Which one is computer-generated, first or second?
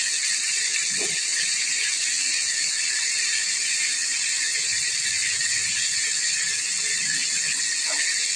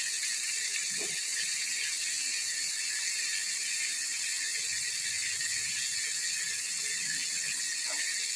first